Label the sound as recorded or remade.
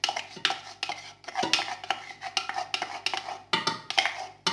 recorded